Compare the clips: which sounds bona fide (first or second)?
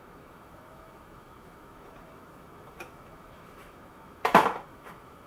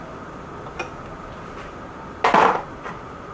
second